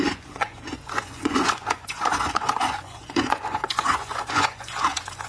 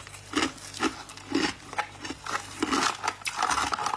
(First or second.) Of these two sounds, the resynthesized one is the first